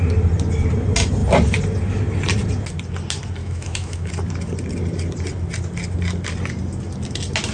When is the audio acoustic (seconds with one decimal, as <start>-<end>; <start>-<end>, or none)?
0.0-3.4; 4.1-7.5